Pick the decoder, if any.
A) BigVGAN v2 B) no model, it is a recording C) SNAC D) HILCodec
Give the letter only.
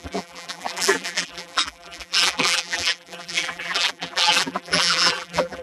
A